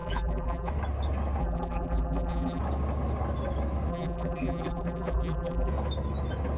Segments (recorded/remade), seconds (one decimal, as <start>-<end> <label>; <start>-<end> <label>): 0.0-0.7 remade; 0.7-1.4 recorded; 1.4-2.6 remade; 2.6-3.9 recorded; 3.9-5.7 remade; 5.7-6.6 recorded